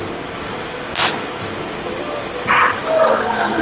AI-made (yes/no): no